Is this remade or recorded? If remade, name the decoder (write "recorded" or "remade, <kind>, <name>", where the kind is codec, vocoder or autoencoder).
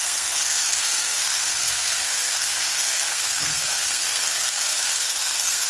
remade, codec, SNAC